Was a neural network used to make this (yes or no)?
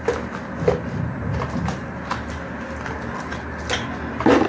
no